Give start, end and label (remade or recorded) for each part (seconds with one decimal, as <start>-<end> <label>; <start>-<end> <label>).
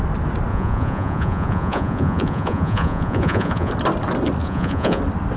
0.0-0.5 recorded; 0.5-3.7 remade; 3.7-4.4 recorded; 4.4-5.0 remade; 5.0-5.4 recorded